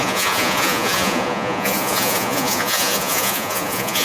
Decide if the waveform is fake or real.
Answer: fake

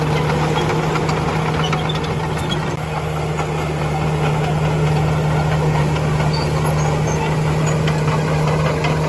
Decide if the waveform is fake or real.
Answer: real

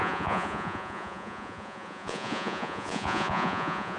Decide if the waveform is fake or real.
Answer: fake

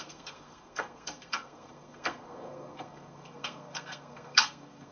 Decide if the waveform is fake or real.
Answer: fake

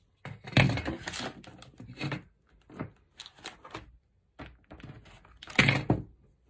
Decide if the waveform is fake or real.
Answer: real